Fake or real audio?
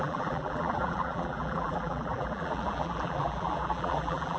fake